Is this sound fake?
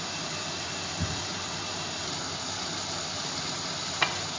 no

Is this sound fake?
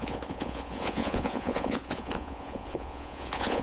yes